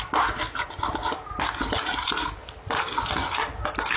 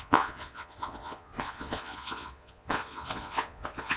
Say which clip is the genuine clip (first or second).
first